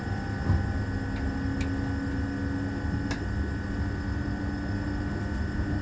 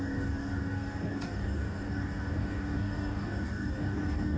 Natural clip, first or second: first